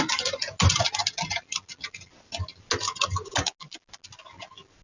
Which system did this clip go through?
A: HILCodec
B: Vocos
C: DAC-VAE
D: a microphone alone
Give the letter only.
D